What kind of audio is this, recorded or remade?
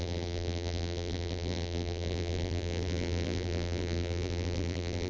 remade